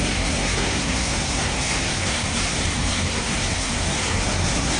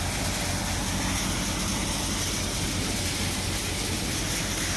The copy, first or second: first